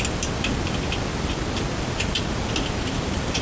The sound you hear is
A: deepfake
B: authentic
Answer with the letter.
B